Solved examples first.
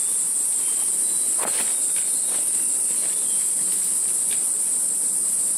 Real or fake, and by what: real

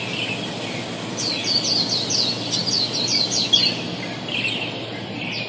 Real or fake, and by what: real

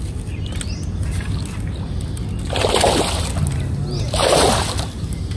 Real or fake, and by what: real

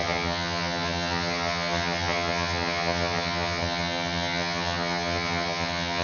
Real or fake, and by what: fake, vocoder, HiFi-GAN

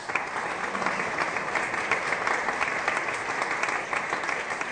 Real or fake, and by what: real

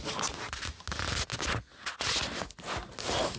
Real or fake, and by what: real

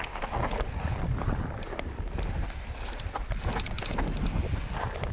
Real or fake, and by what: real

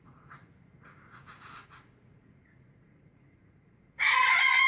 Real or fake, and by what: fake, vocoder, Vocos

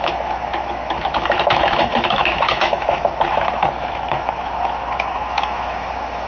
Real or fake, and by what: fake, autoencoder, DAC-VAE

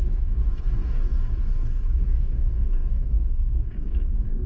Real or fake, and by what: fake, codec, DAC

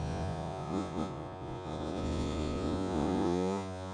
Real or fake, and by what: fake, vocoder, Vocos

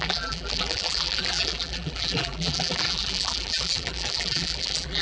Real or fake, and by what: fake, vocoder, BigVGAN v2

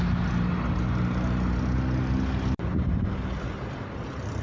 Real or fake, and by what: real